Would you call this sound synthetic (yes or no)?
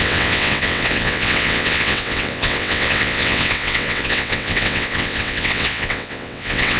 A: yes